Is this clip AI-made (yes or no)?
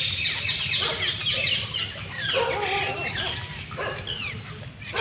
no